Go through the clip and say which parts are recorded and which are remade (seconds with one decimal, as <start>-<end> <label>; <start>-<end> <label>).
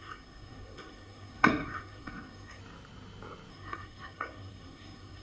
0.0-2.6 remade; 2.6-3.5 recorded; 3.5-5.2 remade